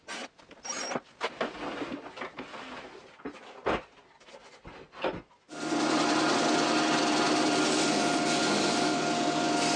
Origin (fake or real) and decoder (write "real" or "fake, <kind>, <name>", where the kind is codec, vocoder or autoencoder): real